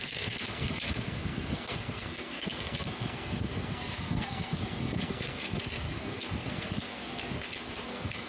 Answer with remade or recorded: remade